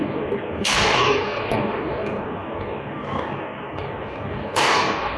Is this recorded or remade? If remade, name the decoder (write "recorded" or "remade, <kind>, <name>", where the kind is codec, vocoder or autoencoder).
remade, codec, DAC